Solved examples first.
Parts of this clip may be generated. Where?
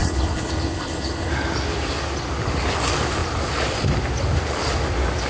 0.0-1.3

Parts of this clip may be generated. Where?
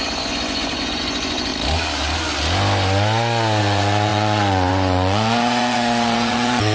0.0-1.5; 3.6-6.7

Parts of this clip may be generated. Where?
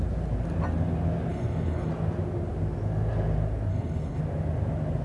1.3-1.9; 3.7-4.2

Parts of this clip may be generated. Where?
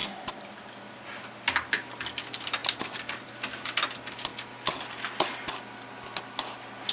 2.6-3.3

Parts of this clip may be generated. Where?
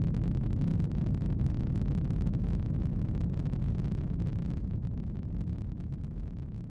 0.7-1.5; 4.3-6.2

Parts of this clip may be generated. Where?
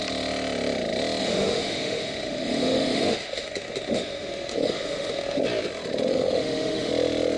1.2-5.4; 6.1-6.9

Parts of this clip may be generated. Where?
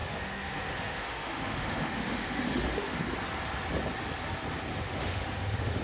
0.0-3.0; 4.7-5.8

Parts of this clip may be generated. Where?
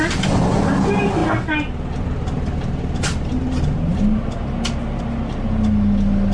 none